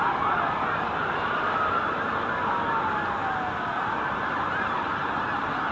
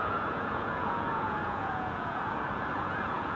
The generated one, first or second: second